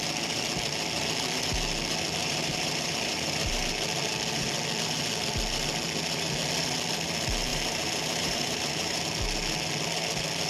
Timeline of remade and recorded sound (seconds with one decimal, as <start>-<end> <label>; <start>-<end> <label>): 0.0-2.2 recorded; 2.2-3.7 remade; 3.7-7.5 recorded; 7.5-9.0 remade; 9.0-10.5 recorded